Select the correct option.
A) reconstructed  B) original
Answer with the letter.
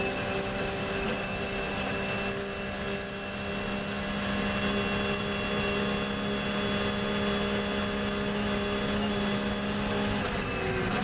B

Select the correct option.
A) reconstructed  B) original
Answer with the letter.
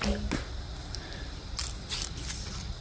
B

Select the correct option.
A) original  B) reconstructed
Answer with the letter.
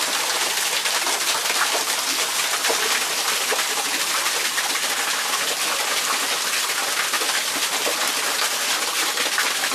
A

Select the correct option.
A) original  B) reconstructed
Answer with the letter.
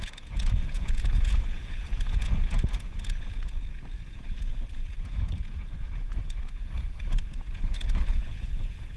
B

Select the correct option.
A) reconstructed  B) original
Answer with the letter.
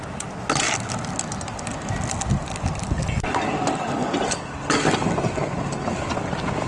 B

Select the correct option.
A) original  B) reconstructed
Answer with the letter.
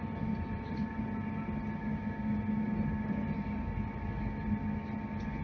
A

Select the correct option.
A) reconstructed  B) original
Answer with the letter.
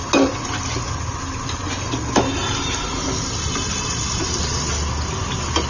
B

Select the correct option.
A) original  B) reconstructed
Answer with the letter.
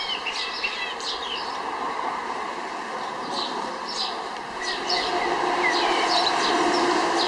B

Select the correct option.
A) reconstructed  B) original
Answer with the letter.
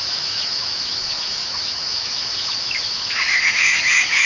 A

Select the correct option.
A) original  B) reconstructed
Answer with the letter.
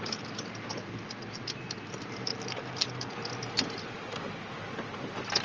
A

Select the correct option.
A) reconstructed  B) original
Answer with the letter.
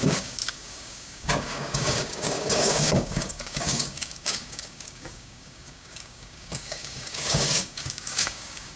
A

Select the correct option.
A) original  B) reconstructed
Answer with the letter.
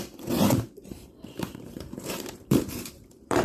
B